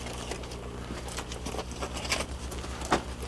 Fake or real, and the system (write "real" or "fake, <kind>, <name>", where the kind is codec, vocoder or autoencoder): real